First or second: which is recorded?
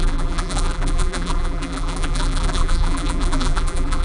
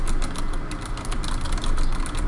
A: second